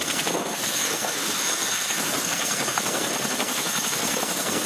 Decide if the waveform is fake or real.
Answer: fake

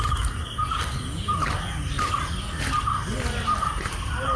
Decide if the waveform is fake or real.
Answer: real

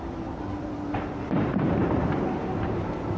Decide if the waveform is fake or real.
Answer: fake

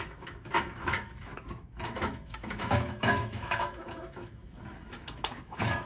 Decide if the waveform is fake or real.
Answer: fake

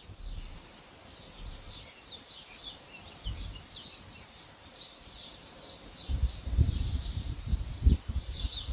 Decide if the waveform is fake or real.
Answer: fake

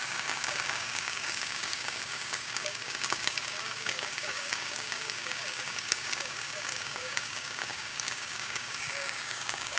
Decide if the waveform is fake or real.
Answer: fake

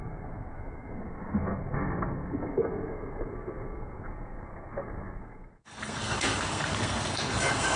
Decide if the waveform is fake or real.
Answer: fake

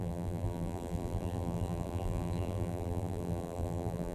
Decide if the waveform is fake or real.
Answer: fake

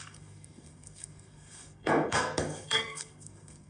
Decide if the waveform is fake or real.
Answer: fake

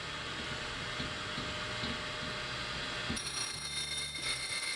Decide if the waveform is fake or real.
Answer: real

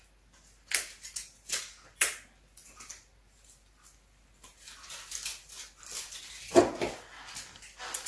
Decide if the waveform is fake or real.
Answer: real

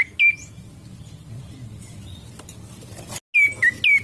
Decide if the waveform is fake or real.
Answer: real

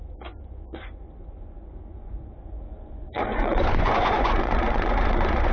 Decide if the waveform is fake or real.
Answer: fake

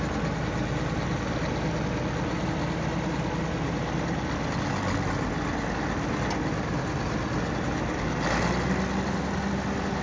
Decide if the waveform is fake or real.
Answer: real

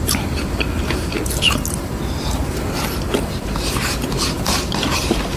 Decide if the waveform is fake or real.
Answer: fake